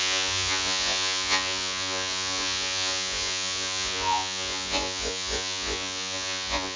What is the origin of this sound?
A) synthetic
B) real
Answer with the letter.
A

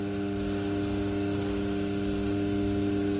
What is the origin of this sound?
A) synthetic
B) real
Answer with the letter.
B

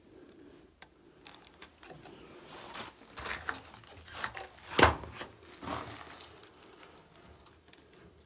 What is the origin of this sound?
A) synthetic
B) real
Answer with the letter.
B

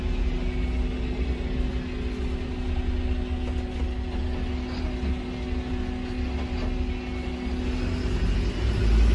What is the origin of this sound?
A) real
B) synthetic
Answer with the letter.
A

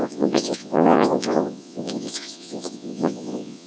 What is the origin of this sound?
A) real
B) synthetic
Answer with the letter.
B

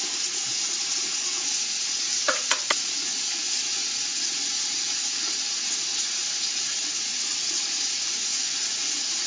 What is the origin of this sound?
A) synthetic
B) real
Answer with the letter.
A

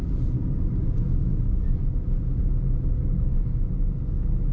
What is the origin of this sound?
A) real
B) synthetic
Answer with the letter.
A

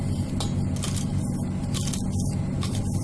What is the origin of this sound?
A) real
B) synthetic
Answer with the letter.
A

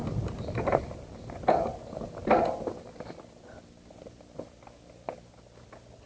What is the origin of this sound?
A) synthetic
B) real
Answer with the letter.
B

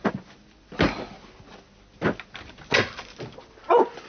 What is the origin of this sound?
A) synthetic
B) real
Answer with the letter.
B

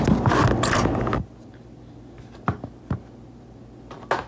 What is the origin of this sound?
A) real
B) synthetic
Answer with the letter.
A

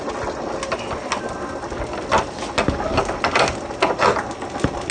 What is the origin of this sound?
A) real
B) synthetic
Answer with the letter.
A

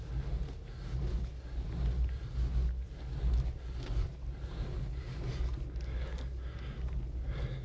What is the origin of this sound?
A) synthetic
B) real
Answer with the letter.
B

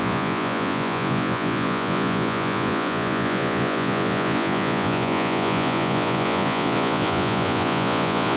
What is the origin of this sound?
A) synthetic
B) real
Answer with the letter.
A